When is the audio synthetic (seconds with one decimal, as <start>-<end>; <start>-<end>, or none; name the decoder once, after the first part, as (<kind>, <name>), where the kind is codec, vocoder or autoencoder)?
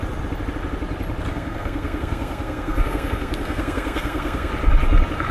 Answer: 1.3-4.5 (codec, SNAC)